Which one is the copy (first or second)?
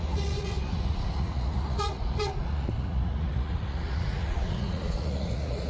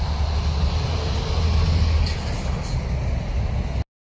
first